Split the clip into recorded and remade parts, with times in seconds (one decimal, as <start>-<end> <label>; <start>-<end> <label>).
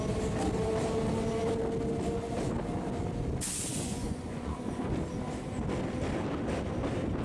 0.0-3.7 recorded; 3.7-4.8 remade; 4.8-7.2 recorded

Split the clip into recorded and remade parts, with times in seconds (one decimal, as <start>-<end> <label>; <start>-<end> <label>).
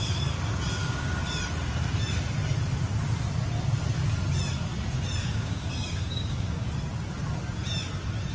0.0-0.8 recorded; 0.8-1.4 remade; 1.4-5.2 recorded; 5.2-6.6 remade; 6.6-8.3 recorded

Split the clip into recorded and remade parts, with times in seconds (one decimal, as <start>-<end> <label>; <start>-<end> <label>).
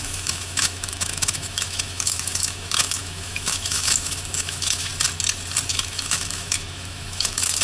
0.0-4.9 remade; 4.9-5.7 recorded; 5.7-7.6 remade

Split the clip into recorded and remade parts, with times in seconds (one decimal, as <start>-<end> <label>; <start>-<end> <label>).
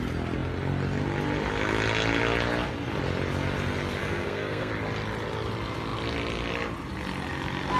0.0-4.0 recorded; 4.0-4.7 remade; 4.7-7.8 recorded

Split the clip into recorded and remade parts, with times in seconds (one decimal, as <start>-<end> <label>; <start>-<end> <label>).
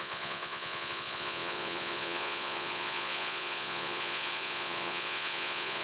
0.0-5.8 remade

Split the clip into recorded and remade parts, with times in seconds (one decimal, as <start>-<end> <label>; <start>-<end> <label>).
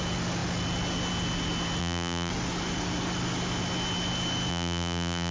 0.0-1.8 recorded; 1.8-2.3 remade; 2.3-4.5 recorded; 4.5-5.3 remade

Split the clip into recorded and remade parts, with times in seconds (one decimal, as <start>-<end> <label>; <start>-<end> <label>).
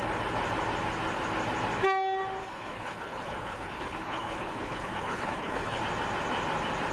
0.0-2.4 recorded; 2.4-5.8 remade; 5.8-6.9 recorded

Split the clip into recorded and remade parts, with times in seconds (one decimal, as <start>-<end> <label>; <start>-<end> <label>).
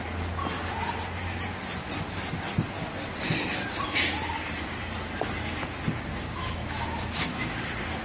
0.0-6.4 recorded; 6.4-7.5 remade; 7.5-8.0 recorded